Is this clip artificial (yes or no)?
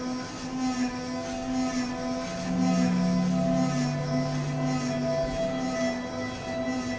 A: no